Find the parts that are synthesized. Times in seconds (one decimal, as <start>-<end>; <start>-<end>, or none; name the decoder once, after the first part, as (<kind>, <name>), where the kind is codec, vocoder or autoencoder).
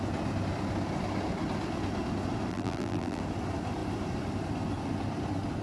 2.5-3.2 (vocoder, BigVGAN v2)